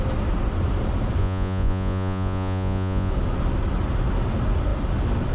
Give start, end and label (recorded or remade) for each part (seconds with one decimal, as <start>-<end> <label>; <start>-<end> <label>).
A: 0.0-1.2 recorded; 1.2-3.1 remade; 3.1-5.3 recorded